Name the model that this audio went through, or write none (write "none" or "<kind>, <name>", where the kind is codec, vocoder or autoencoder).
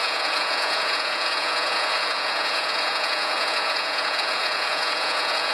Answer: vocoder, Vocos